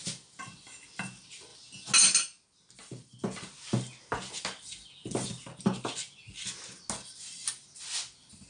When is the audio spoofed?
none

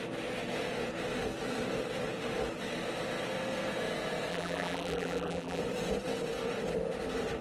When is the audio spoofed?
4.3-5.6 (vocoder, BigVGAN v2)